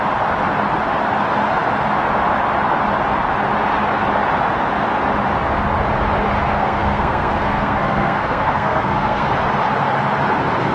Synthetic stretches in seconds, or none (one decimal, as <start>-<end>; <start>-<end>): 6.5-9.3